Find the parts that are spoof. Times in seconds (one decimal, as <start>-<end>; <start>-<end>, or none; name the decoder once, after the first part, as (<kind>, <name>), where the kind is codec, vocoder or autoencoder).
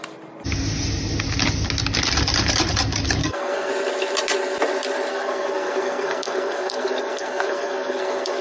3.2-3.7 (codec, SNAC); 5.1-8.4